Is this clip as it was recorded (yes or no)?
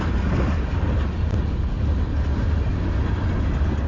yes